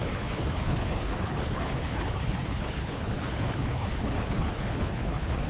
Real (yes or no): no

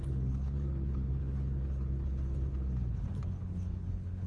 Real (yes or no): no